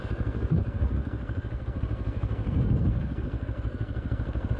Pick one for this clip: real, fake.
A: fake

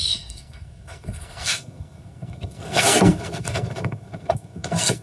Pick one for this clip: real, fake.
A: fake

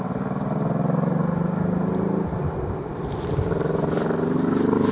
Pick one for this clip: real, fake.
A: real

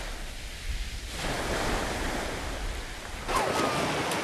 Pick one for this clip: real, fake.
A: real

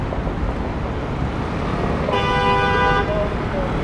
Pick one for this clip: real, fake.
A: real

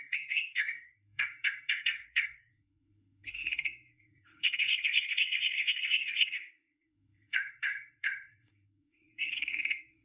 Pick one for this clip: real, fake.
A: fake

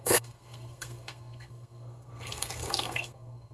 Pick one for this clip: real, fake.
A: fake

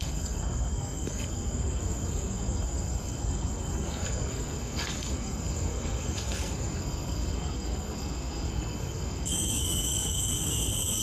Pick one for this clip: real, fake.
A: fake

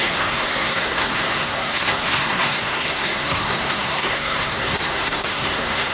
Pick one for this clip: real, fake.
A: fake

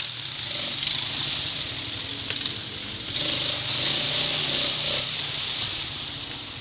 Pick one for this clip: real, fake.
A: real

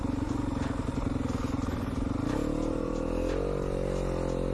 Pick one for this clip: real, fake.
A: real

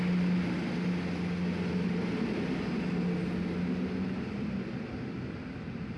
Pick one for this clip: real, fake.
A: real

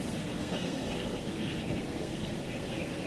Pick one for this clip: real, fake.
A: fake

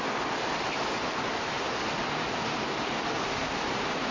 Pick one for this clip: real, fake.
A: real